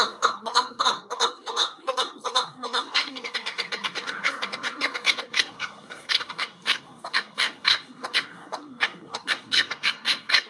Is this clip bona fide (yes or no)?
no